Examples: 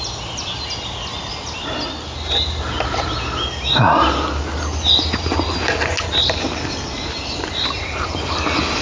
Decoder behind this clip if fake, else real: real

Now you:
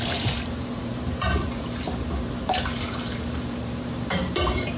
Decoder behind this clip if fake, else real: fake, vocoder, BigVGAN v2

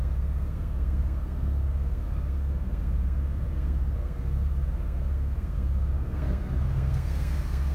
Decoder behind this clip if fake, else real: fake, codec, SNAC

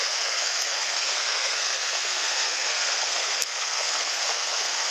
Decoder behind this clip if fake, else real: fake, codec, SNAC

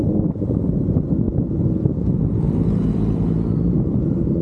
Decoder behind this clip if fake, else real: real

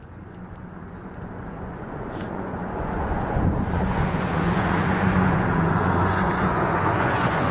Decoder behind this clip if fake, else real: fake, vocoder, Vocos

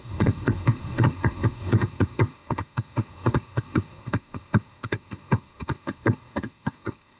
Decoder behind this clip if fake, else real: fake, codec, SNAC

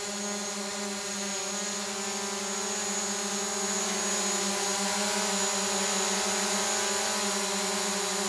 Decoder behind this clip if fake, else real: real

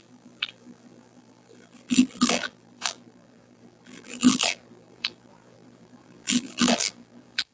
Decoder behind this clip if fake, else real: fake, vocoder, BigVGAN v2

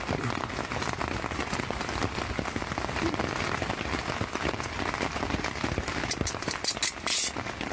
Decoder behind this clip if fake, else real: real